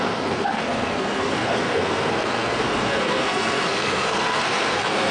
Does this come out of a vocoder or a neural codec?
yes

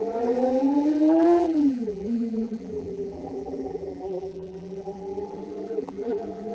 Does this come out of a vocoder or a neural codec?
yes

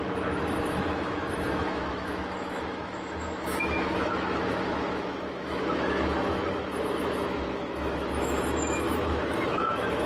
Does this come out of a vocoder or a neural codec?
yes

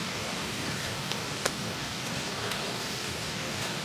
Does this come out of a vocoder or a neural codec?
yes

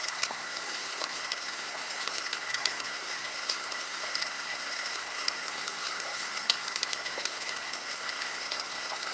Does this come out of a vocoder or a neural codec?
yes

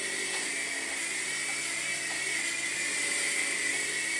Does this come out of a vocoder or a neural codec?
no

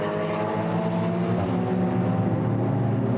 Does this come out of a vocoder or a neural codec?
no